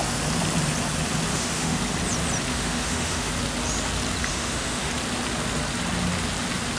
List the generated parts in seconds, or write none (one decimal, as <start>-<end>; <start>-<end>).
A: 1.3-1.8; 2.5-3.3; 4.3-4.9